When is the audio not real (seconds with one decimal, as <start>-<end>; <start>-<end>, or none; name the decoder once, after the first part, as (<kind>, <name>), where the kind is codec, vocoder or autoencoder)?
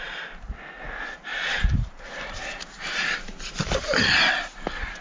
1.3-4.3 (vocoder, BigVGAN v2)